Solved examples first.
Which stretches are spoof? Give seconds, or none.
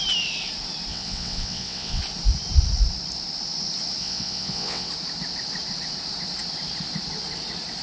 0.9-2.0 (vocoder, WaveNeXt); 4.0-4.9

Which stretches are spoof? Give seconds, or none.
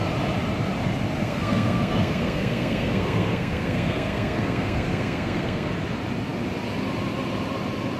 1.2-5.7 (codec, SNAC)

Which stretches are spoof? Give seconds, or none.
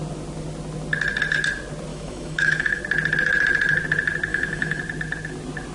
1.9-2.8 (autoencoder, DAC-VAE); 4.3-4.8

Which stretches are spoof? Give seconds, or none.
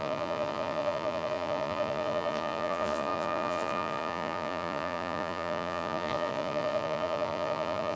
0.0-8.0 (vocoder, Vocos)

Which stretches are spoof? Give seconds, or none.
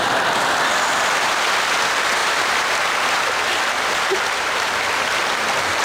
none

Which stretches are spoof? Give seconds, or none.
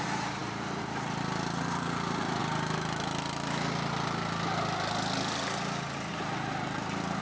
0.0-2.4 (vocoder, BigVGAN v2); 6.1-7.2